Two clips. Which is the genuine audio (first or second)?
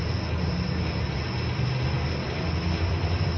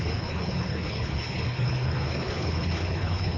first